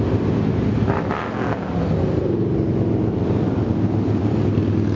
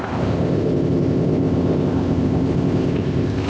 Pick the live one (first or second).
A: first